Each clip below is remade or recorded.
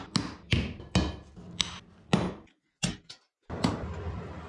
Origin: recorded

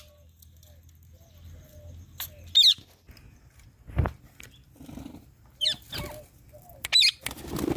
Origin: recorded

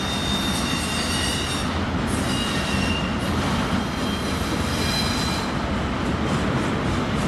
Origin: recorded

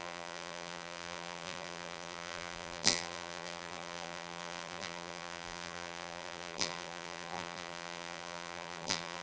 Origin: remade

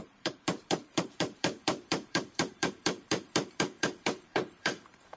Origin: remade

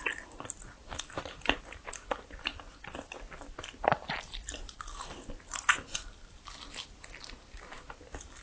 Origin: recorded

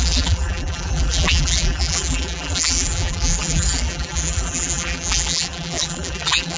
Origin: remade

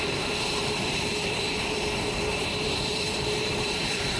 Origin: remade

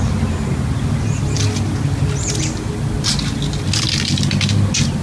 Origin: recorded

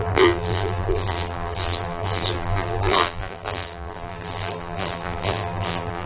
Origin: remade